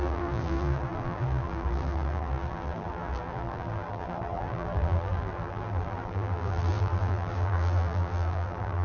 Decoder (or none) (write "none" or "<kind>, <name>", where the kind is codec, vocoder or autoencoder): vocoder, BigVGAN v2